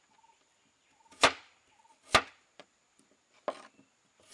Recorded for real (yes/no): yes